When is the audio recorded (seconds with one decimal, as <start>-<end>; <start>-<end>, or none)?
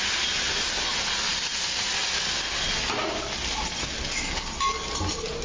0.0-5.4